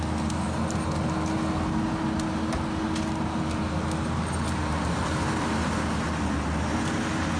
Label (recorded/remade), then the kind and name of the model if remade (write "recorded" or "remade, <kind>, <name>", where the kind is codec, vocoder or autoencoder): recorded